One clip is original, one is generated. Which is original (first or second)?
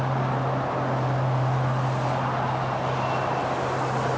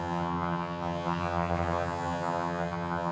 first